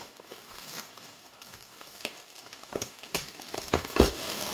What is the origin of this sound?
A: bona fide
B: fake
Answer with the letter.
B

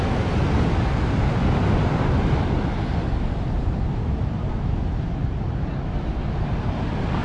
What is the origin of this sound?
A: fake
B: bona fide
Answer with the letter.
B